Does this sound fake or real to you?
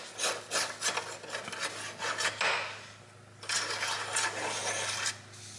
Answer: real